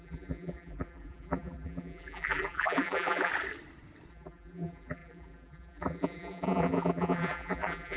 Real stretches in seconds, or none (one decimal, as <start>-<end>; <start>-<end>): 3.3-4.1